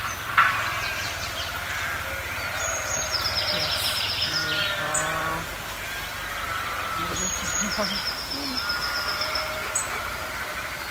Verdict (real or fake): real